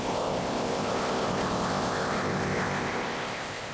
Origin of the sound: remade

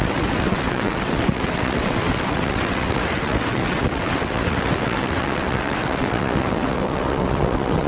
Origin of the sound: remade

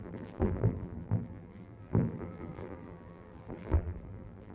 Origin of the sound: remade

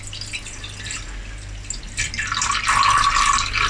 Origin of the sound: recorded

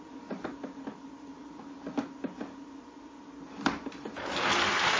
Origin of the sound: recorded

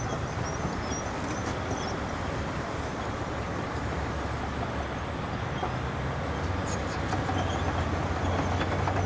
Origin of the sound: recorded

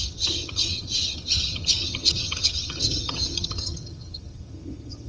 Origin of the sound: remade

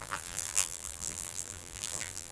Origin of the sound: remade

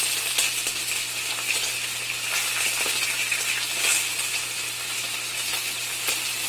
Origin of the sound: recorded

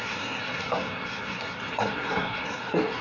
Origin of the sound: remade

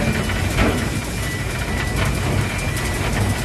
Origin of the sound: recorded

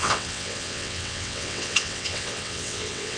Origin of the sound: remade